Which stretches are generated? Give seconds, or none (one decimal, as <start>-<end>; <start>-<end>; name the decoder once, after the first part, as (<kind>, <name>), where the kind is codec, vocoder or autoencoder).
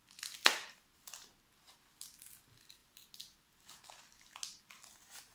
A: none